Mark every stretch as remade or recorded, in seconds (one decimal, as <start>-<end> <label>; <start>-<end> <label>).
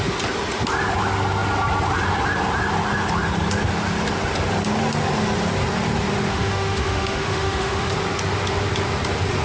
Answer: 0.0-6.3 recorded; 6.3-7.9 remade; 7.9-9.4 recorded